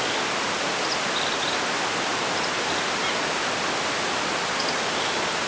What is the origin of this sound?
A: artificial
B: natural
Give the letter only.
B